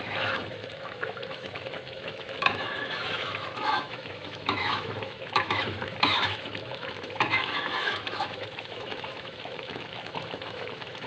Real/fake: fake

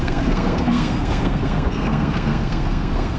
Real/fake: fake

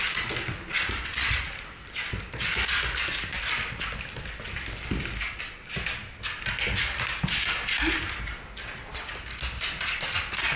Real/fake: real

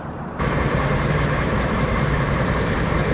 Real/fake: fake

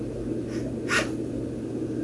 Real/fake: real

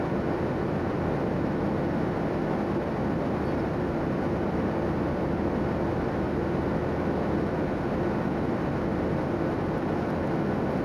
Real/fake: real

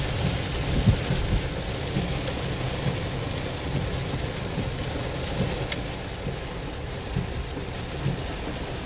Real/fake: real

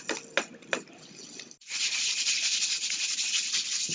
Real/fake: real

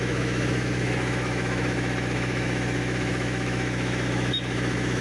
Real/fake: fake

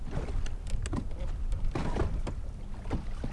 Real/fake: real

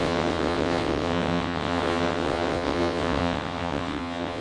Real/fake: fake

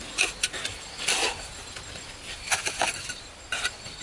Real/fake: real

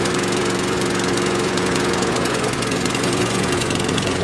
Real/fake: fake